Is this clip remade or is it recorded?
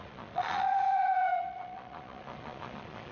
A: remade